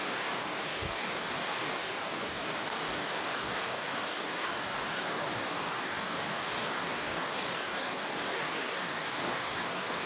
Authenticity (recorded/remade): remade